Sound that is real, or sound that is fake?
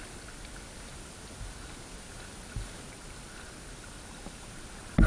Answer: real